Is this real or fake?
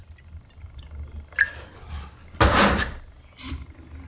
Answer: real